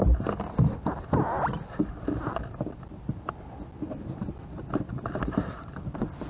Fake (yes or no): no